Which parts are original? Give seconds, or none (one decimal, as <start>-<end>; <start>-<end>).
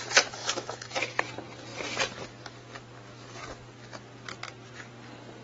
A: 0.0-0.4; 1.2-5.4